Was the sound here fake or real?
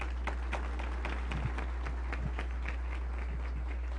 real